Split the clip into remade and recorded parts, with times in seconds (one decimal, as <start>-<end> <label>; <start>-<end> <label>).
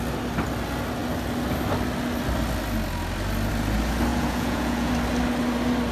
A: 0.0-4.1 recorded; 4.1-4.9 remade; 4.9-5.9 recorded